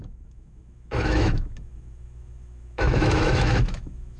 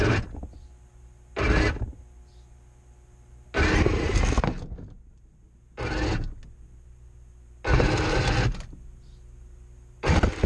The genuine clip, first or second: second